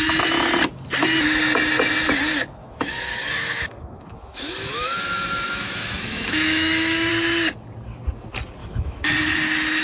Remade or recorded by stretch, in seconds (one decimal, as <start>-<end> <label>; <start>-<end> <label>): 0.0-2.6 recorded; 2.6-7.1 remade; 7.1-8.6 recorded; 8.6-9.1 remade; 9.1-9.8 recorded